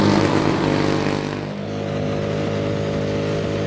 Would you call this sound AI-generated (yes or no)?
no